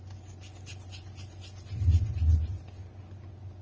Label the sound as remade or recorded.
recorded